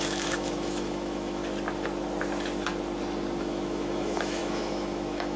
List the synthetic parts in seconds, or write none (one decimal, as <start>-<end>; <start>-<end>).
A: 0.0-1.4; 3.4-5.4